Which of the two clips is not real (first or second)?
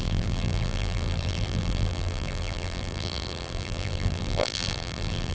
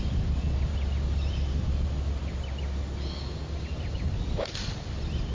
first